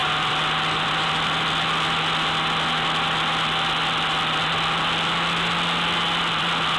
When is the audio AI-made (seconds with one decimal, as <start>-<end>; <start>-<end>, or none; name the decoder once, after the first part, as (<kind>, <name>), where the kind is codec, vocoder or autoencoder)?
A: 0.0-1.3 (vocoder, BigVGAN v2)